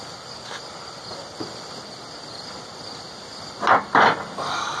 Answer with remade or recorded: recorded